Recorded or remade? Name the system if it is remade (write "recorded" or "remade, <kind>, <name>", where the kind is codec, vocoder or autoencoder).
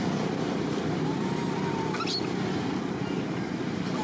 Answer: recorded